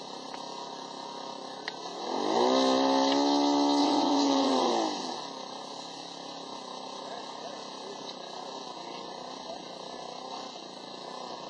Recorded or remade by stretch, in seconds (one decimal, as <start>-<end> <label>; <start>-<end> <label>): 0.0-3.8 recorded; 3.8-4.7 remade; 4.7-11.5 recorded